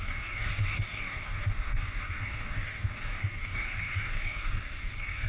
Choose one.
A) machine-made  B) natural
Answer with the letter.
A